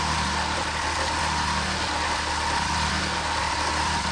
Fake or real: real